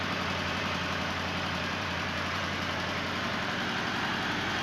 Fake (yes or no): yes